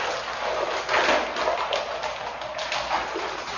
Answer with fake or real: real